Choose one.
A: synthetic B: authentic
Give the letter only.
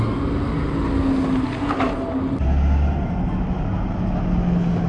B